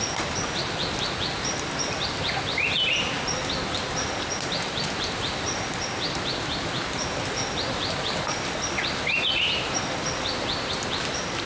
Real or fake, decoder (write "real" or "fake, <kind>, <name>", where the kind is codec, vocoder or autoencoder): real